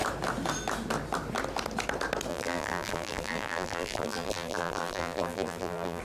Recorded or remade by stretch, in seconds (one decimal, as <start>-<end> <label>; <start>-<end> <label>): 0.0-2.3 recorded; 2.3-6.0 remade